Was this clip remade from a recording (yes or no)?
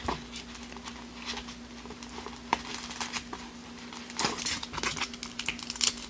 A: no